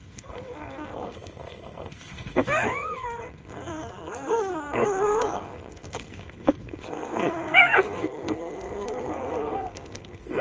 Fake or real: fake